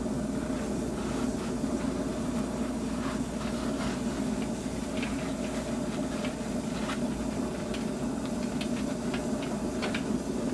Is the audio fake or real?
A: real